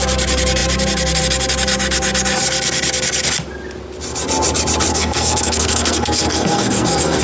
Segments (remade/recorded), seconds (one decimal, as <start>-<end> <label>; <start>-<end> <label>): 0.0-4.9 recorded; 4.9-7.2 remade